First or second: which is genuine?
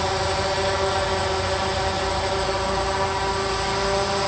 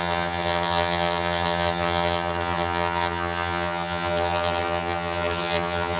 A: first